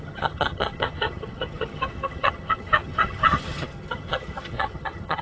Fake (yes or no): yes